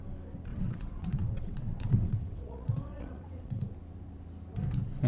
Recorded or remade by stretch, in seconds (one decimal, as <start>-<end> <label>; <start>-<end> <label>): 0.0-0.5 recorded; 0.5-3.6 remade; 3.6-5.1 recorded